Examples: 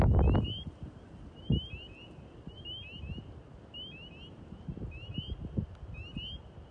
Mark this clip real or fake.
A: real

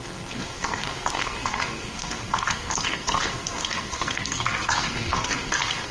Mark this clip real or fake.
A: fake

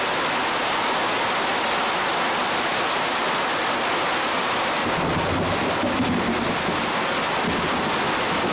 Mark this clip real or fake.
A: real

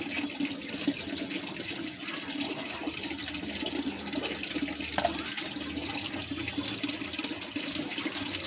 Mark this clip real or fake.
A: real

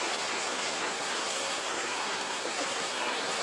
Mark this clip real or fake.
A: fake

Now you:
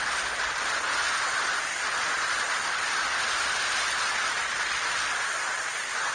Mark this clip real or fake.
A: real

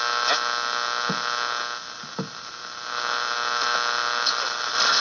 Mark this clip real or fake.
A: real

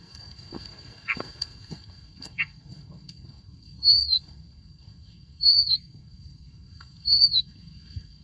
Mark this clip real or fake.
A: fake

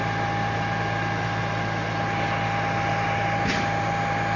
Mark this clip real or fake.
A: real